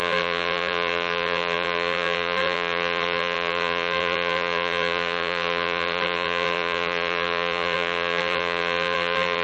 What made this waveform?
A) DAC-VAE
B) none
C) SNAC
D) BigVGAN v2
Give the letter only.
D